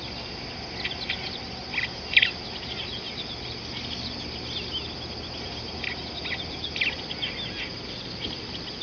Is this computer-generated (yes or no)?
no